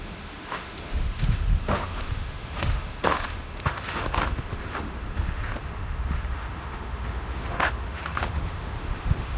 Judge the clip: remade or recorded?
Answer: remade